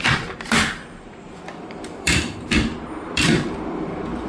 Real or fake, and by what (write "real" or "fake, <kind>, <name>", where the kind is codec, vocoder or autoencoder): fake, vocoder, BigVGAN v2